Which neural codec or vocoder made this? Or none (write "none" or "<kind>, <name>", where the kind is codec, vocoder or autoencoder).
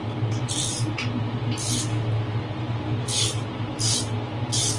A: none